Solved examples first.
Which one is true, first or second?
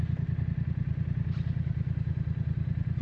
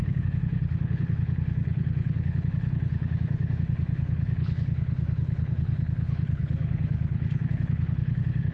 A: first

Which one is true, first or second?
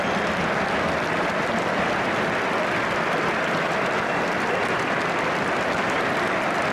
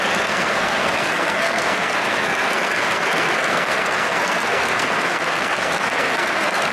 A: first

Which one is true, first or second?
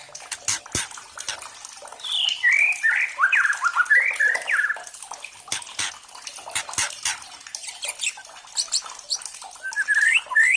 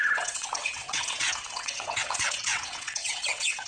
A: first